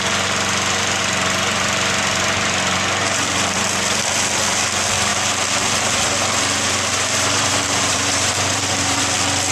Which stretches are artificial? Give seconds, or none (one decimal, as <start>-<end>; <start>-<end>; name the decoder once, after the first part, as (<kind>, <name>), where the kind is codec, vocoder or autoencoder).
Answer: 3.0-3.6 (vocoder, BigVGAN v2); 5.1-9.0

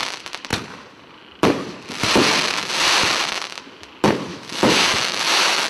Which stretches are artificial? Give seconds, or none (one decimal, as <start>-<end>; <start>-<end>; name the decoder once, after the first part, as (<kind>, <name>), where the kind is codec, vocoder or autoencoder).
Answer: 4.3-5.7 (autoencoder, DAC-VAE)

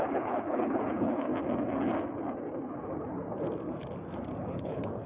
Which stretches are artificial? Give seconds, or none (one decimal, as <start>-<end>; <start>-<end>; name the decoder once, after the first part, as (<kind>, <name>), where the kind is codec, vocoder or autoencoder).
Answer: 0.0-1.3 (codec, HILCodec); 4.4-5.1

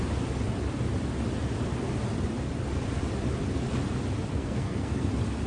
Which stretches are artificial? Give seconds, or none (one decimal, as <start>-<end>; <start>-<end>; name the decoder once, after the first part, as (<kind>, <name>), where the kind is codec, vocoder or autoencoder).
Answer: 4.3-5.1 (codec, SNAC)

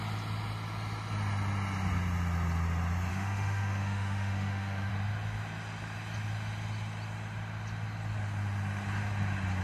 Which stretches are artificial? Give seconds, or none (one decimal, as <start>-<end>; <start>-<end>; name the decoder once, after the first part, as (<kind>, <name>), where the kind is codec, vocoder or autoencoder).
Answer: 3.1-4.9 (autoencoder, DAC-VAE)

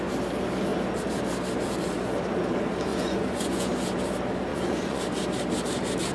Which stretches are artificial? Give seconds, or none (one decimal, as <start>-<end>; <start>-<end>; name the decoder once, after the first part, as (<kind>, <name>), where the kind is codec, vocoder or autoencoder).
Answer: 2.9-3.7 (vocoder, Vocos); 4.5-5.0

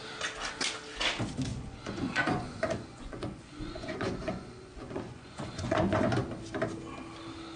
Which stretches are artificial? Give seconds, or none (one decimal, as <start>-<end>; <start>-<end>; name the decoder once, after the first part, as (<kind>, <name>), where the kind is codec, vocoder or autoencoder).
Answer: 1.5-6.1 (vocoder, Vocos)

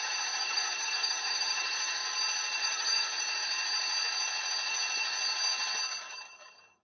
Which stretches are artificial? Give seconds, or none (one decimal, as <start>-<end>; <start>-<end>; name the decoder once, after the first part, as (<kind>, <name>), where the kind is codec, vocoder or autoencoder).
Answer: 0.0-2.0 (vocoder, HiFi-GAN); 2.6-3.1; 6.1-6.8